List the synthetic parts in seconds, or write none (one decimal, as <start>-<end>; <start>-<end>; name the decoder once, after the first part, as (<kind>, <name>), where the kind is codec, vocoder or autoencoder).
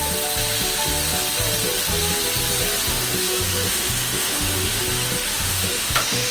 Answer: 2.9-4.8 (autoencoder, DAC-VAE); 5.3-6.3